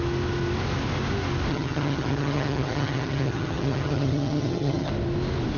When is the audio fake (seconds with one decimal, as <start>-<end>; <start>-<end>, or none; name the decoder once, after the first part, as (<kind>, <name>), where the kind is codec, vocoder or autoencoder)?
1.5-4.9 (vocoder, HiFi-GAN)